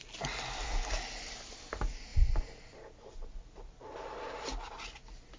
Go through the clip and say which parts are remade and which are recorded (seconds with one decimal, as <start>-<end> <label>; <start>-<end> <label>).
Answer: 0.0-5.4 recorded